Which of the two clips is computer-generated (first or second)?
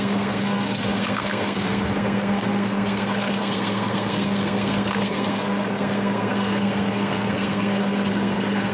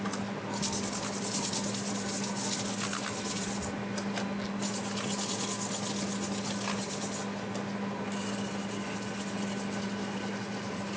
first